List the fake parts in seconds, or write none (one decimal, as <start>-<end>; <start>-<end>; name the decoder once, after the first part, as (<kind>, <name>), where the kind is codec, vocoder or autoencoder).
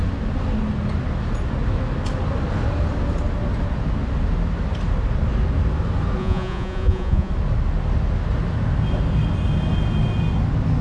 6.2-7.3 (vocoder, Vocos)